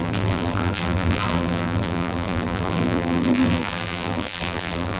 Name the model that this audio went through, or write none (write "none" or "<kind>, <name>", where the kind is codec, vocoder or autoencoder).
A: vocoder, BigVGAN v2